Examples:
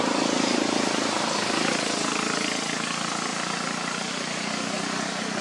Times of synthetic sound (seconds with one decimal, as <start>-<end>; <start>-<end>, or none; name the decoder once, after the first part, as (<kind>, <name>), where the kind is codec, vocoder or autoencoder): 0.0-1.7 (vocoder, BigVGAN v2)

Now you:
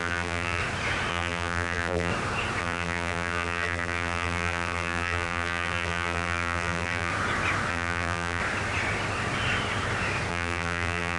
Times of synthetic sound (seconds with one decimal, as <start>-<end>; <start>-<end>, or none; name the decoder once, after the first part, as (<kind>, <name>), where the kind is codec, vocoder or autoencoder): 0.0-0.6 (vocoder, BigVGAN v2); 1.1-2.1; 2.6-7.1; 7.7-8.4; 10.3-11.2

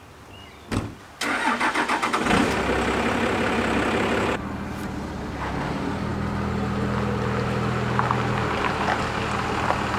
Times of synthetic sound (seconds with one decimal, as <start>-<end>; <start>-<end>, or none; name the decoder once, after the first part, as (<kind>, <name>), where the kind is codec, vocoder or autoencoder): none

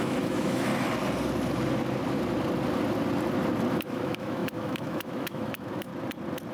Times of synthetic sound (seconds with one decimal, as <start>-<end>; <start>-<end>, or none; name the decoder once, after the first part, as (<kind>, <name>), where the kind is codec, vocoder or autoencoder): 0.0-0.7 (autoencoder, DAC-VAE); 3.7-5.9